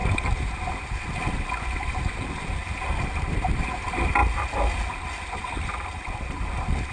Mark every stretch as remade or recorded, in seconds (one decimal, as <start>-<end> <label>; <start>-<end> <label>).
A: 0.0-6.9 recorded